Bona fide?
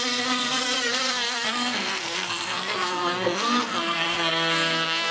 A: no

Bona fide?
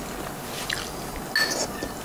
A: yes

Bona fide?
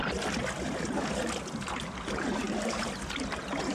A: yes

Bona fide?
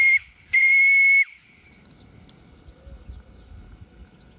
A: yes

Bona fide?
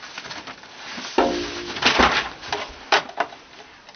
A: yes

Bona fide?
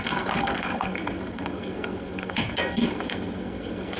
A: no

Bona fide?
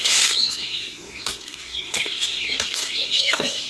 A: no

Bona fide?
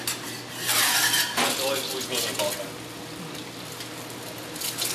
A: yes